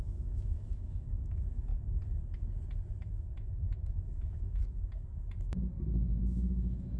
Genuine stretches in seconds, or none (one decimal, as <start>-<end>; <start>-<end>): 1.7-3.1; 4.6-6.2